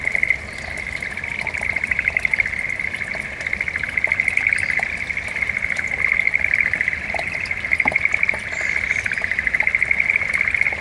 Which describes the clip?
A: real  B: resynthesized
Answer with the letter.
A